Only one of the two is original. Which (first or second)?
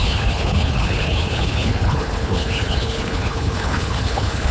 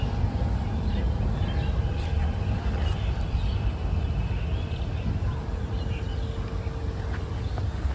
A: second